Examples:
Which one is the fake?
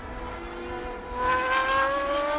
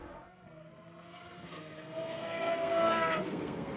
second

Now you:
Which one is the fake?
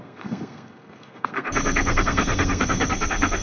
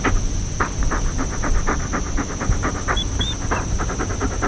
first